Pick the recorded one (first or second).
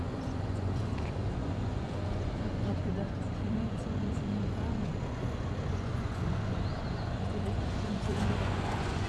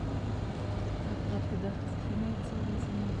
second